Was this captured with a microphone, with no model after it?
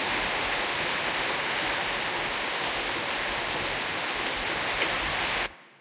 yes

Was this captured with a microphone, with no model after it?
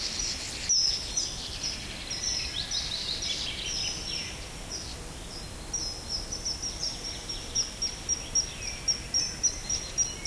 yes